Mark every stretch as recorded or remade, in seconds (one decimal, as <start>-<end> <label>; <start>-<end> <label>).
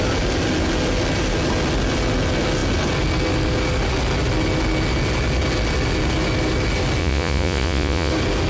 0.0-7.0 recorded; 7.0-8.1 remade; 8.1-8.5 recorded